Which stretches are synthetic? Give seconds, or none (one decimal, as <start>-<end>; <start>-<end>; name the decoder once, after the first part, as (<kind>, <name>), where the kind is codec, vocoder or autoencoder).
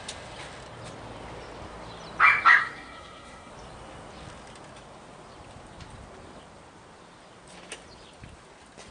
2.6-3.5 (codec, SNAC)